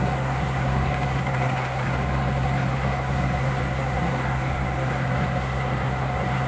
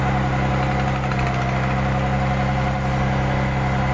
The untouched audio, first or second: second